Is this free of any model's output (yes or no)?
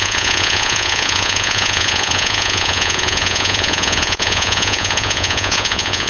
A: no